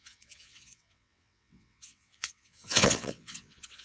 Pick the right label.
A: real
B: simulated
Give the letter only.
B